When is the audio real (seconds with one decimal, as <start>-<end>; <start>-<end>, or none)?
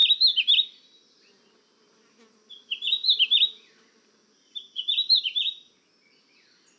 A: 1.3-3.0; 5.2-6.8